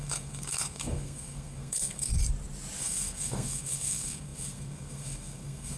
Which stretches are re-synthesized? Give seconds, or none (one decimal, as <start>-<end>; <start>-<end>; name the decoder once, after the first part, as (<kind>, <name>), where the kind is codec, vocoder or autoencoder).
0.0-2.1 (codec, SNAC); 2.8-5.8